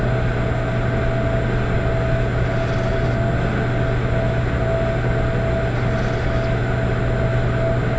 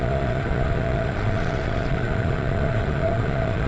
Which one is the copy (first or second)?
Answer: second